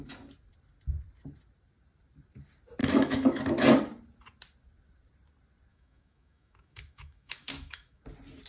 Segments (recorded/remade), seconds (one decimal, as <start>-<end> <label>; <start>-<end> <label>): 0.0-2.8 recorded; 2.8-3.4 remade; 3.4-5.7 recorded; 5.7-8.0 remade; 8.0-8.5 recorded